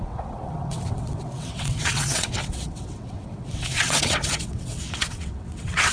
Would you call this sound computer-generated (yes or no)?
yes